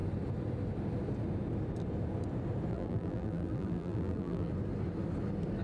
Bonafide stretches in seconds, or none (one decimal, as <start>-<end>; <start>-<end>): 0.0-2.7; 4.5-5.6